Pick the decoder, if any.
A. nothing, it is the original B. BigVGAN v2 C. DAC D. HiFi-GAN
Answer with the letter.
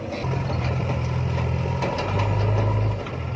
A